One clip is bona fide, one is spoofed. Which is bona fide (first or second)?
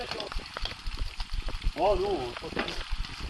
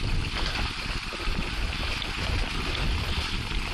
second